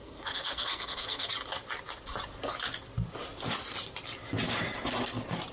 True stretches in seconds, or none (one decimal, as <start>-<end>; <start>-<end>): 1.3-5.5